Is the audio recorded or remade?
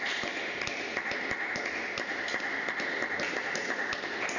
recorded